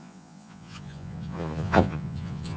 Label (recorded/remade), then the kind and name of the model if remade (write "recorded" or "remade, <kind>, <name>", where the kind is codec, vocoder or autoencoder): remade, vocoder, Vocos